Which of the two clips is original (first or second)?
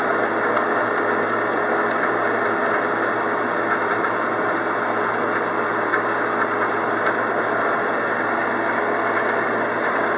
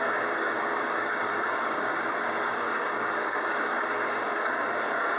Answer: first